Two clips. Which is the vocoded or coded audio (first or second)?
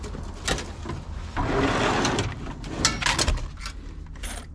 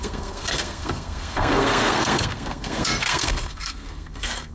second